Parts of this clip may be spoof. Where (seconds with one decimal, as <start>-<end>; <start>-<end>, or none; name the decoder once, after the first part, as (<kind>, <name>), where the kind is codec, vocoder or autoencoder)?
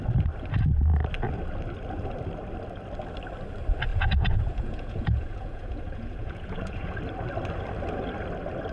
3.9-7.0 (vocoder, Vocos)